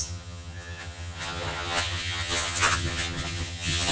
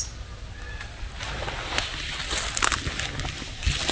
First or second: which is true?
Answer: second